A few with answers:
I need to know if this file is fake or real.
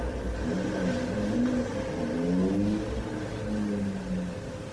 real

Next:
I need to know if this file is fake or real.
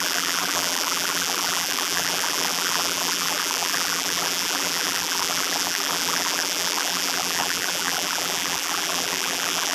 fake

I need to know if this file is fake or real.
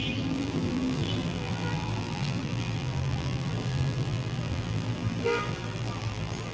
fake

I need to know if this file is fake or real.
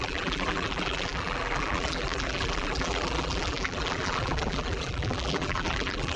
fake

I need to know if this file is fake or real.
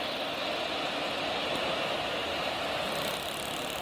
real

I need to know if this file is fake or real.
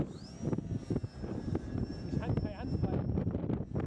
real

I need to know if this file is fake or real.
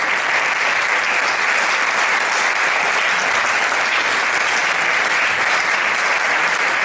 fake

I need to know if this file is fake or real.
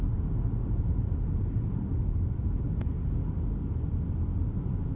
real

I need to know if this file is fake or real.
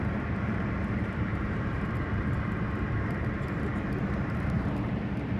fake